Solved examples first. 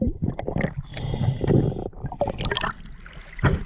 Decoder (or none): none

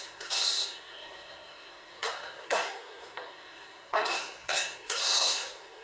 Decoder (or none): codec, SNAC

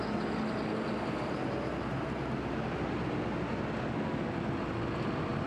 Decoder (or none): none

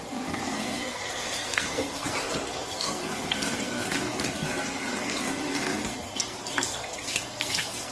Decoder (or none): codec, SNAC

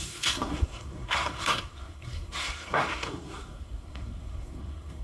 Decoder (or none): codec, SNAC